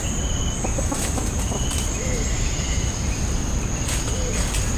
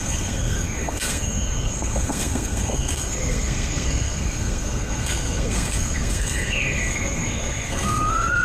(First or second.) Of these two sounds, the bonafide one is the first